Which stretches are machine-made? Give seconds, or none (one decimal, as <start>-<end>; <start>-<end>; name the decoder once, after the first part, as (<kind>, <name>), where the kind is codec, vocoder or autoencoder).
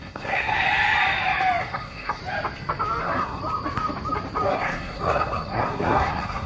0.0-0.5 (codec, SNAC); 1.6-2.2; 3.0-3.4; 4.5-6.5